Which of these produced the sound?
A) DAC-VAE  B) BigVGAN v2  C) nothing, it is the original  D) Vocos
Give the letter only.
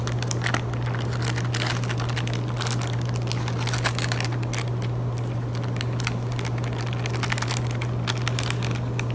C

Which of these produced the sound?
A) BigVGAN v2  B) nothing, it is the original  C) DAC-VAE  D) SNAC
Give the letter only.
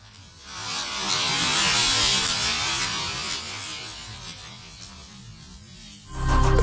B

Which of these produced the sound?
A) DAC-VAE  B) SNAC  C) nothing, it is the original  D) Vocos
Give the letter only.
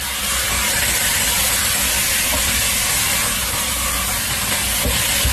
C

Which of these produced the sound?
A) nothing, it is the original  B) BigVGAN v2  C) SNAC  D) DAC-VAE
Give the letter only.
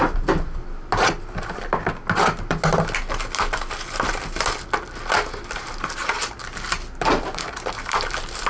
A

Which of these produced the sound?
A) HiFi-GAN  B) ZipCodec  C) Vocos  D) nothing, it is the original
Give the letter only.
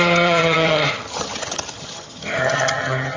A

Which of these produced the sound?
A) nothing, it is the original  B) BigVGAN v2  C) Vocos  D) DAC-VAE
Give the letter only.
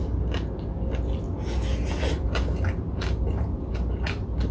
A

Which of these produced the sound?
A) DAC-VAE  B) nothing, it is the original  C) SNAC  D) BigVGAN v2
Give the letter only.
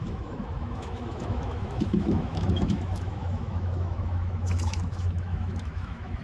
A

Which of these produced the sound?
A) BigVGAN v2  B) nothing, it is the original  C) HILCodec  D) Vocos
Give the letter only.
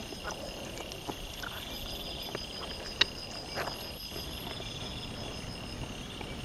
B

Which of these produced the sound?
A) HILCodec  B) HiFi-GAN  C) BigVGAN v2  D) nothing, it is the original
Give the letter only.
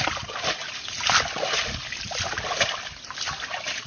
D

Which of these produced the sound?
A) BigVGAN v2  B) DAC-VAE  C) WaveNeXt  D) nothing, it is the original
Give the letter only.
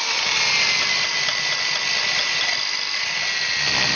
D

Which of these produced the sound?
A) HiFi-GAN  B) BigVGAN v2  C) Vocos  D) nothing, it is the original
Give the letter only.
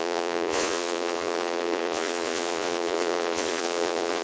C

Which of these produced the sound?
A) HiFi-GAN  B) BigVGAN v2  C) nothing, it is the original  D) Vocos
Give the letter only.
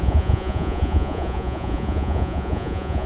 D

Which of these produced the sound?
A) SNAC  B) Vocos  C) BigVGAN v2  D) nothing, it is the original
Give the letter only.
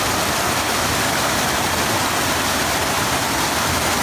D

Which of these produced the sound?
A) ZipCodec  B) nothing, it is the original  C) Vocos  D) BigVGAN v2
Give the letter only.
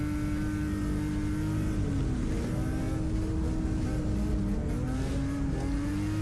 B